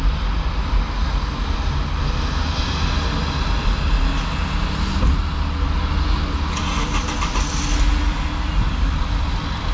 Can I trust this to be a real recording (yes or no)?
yes